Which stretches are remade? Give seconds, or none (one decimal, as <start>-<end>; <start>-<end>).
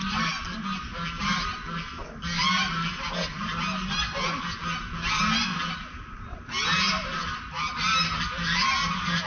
none